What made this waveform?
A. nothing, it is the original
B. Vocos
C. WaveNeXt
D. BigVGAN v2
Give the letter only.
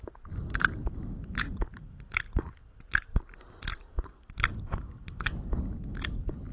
A